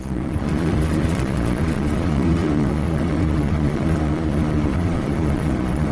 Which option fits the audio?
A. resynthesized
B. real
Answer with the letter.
A